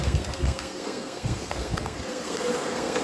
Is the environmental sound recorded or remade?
remade